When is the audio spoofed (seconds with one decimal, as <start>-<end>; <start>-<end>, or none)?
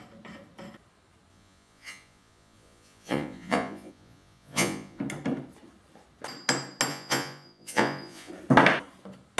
1.3-5.0; 6.9-8.3